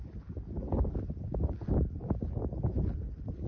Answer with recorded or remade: recorded